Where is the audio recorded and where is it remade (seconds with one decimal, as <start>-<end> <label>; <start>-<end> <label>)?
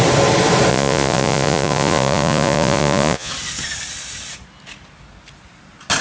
0.0-0.7 recorded; 0.7-3.3 remade; 3.3-6.0 recorded